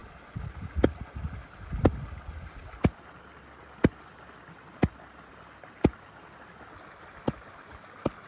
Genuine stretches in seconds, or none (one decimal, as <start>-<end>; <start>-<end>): 0.0-8.3